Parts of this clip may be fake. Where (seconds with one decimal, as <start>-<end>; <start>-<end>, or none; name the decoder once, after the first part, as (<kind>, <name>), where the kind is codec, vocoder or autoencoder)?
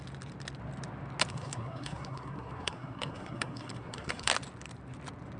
1.3-4.3 (codec, SNAC)